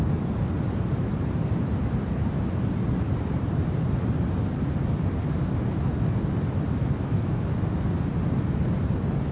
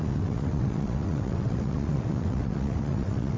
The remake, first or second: second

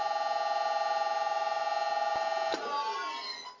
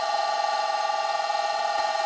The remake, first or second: second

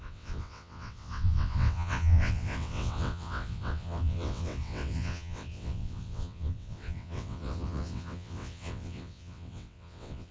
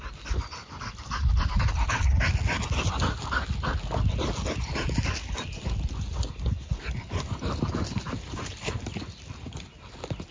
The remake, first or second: first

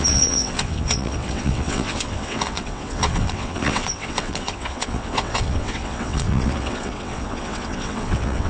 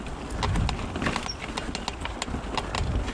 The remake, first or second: first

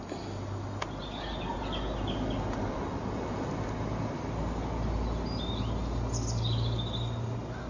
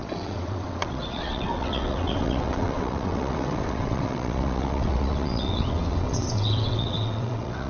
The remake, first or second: second